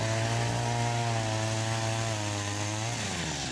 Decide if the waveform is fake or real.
real